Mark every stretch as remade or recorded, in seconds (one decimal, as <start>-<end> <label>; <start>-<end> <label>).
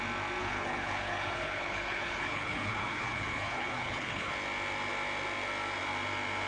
0.0-0.4 recorded; 0.4-4.3 remade; 4.3-6.5 recorded